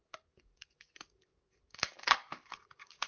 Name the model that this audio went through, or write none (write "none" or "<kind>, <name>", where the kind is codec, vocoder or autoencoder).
codec, DAC